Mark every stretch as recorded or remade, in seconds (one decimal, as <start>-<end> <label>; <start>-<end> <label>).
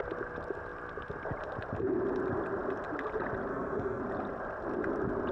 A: 0.0-3.5 recorded; 3.5-4.0 remade; 4.0-5.3 recorded